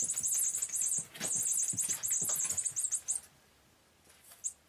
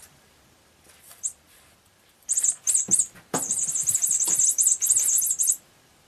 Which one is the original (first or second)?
first